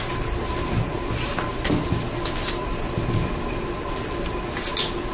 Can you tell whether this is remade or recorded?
recorded